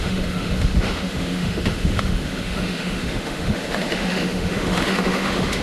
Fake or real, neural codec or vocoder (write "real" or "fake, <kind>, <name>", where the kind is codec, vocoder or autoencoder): fake, autoencoder, DAC-VAE